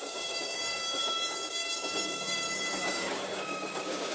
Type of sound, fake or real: fake